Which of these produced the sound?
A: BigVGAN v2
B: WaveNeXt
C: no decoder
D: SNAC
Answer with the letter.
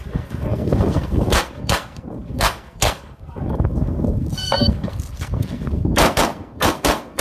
D